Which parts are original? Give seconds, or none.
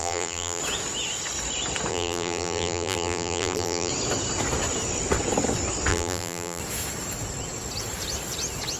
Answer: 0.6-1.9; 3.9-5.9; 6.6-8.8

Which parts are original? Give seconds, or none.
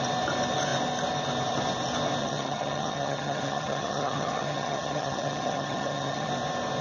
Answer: 0.0-2.2; 6.3-6.8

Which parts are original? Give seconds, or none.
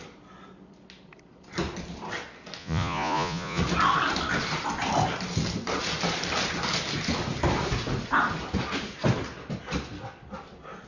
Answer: 0.0-2.6; 3.6-10.9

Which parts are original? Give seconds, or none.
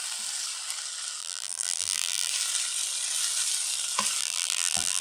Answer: 0.0-1.2; 2.3-4.2